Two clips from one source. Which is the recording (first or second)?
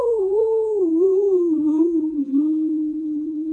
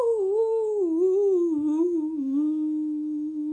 second